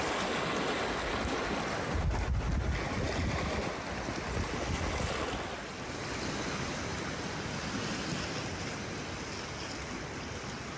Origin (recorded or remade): recorded